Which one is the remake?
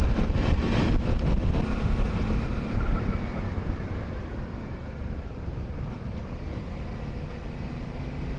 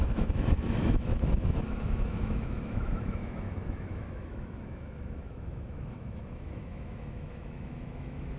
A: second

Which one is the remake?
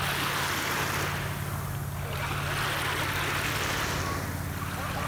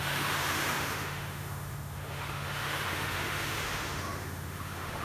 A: second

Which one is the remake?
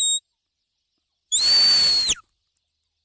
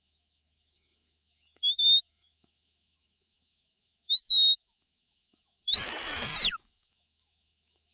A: second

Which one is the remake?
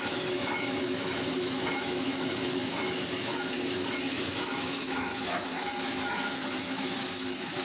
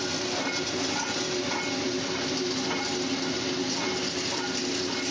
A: first